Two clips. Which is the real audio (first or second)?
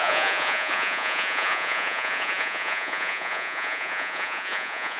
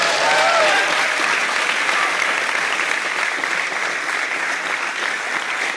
second